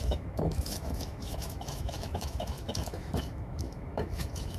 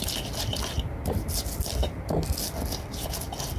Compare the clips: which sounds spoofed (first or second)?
first